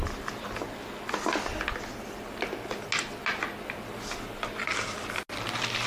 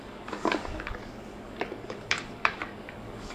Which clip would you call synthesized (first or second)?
second